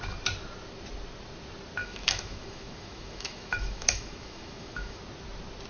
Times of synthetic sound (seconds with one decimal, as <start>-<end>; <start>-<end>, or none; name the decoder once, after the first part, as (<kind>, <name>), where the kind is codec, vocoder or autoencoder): 1.8-5.0 (autoencoder, DAC-VAE)